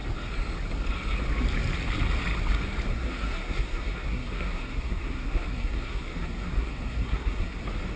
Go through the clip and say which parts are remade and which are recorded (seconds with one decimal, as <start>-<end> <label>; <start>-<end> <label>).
0.0-2.9 recorded; 2.9-7.6 remade; 7.6-8.0 recorded